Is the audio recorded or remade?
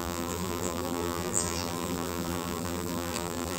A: remade